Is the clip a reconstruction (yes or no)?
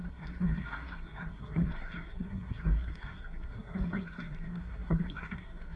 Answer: yes